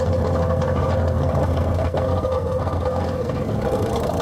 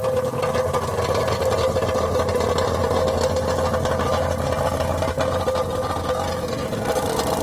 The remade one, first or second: first